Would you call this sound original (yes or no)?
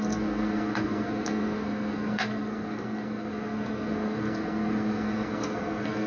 no